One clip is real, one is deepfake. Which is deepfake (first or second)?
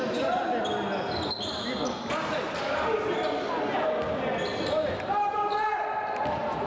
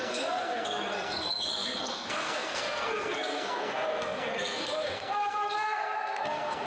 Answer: second